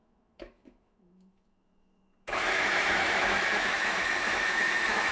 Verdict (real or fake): fake